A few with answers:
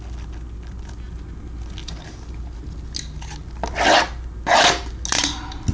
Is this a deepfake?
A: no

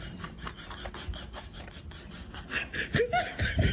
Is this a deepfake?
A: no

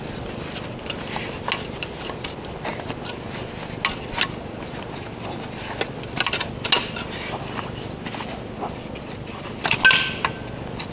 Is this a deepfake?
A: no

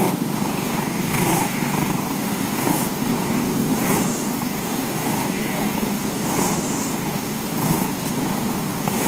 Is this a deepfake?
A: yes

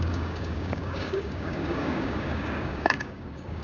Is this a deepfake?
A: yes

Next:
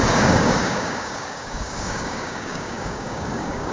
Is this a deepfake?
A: yes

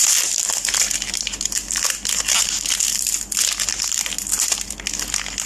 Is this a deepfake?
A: no